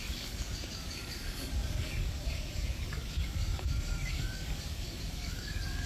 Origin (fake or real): fake